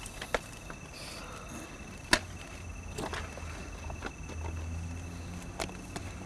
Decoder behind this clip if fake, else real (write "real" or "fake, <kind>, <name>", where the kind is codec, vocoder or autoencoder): real